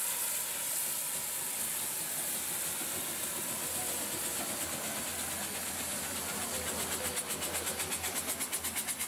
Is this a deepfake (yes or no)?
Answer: no